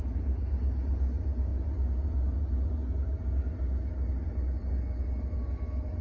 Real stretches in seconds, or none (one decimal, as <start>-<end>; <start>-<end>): 0.0-6.0